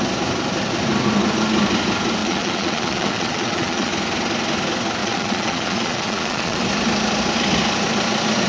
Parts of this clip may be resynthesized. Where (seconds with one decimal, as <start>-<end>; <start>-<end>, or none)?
2.2-3.9; 5.0-6.6